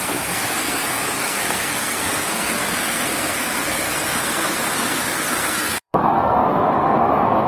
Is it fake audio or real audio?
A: fake